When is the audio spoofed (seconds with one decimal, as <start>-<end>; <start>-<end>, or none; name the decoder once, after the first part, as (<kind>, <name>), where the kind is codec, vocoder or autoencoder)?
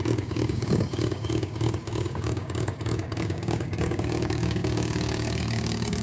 0.0-6.0 (codec, DAC)